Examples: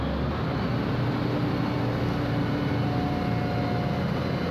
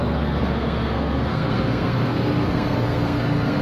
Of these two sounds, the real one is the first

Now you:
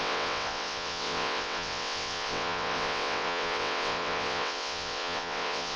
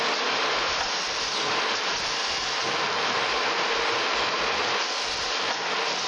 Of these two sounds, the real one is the second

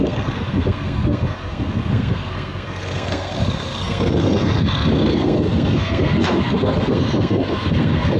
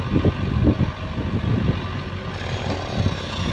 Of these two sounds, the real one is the second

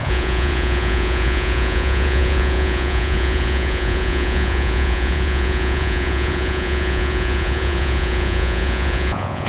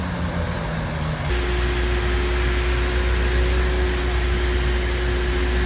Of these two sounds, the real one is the second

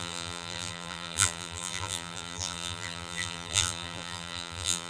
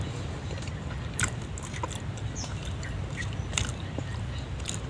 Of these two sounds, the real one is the second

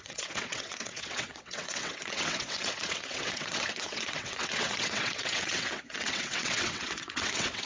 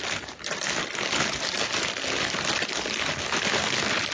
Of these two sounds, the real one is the second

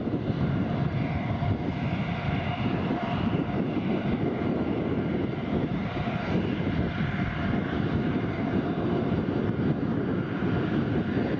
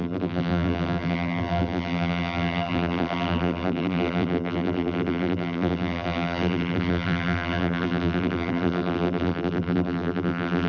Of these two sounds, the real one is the first